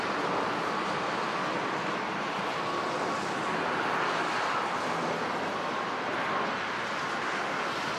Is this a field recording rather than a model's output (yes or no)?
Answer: yes